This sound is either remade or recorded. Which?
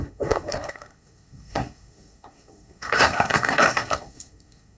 remade